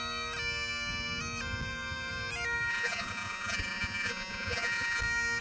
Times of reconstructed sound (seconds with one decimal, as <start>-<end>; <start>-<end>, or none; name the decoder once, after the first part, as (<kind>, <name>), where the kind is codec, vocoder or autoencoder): 2.7-5.0 (vocoder, Vocos)